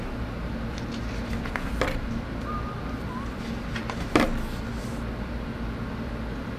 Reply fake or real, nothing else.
real